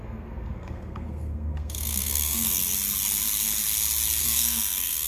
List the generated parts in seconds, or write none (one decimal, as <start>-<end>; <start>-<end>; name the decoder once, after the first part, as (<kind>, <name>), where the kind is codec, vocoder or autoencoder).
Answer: 0.0-2.6 (codec, SNAC); 4.2-5.1

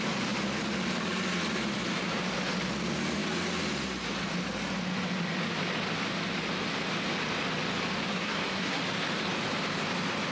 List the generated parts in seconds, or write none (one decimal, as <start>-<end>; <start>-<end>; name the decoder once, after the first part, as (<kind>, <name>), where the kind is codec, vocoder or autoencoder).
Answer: 8.1-8.8 (codec, SNAC)